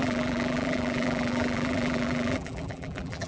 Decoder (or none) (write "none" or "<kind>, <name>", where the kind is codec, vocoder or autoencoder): vocoder, BigVGAN v2